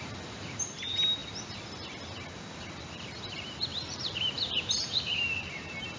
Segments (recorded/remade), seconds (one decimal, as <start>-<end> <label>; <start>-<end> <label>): 0.0-1.2 remade; 1.2-2.9 recorded; 2.9-6.0 remade